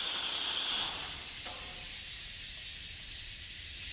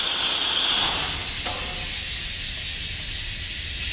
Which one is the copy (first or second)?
first